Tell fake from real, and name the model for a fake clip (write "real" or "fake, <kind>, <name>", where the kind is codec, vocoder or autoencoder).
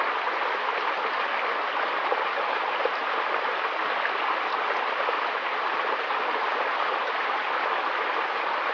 real